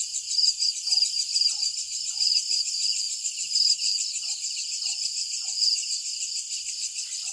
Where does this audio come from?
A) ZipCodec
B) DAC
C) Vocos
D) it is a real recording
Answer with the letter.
D